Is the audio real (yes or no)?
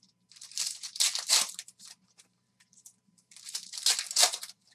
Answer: no